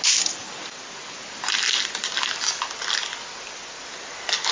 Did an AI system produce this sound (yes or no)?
no